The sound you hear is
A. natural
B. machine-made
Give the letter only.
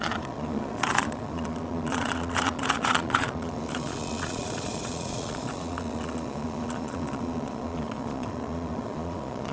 B